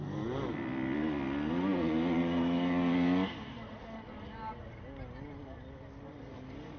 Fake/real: real